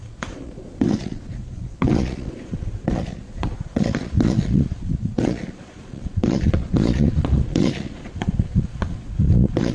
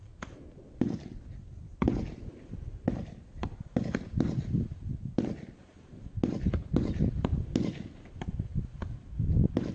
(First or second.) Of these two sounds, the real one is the second